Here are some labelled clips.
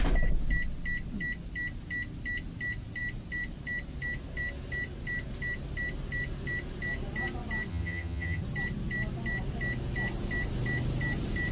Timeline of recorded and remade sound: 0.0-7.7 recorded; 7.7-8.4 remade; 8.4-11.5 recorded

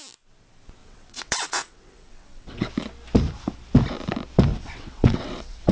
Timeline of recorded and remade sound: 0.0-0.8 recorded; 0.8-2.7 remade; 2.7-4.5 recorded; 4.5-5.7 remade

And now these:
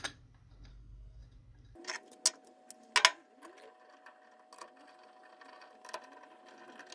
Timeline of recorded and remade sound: 0.0-0.7 recorded; 0.7-1.2 remade; 1.2-6.9 recorded

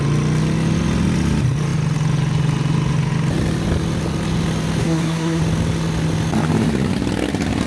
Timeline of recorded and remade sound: 0.0-4.8 recorded; 4.8-5.4 remade; 5.4-7.7 recorded